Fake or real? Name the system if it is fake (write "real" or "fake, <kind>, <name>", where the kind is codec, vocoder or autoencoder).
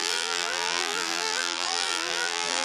fake, vocoder, BigVGAN v2